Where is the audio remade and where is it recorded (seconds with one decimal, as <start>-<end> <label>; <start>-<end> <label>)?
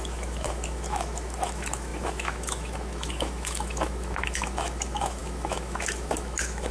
0.0-6.7 remade